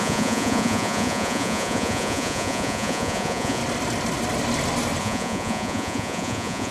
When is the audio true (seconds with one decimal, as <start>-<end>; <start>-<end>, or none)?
3.6-5.0